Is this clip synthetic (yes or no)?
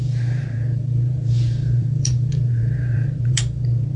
yes